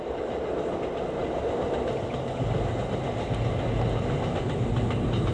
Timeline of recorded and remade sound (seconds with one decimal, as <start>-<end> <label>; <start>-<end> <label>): 0.0-5.3 recorded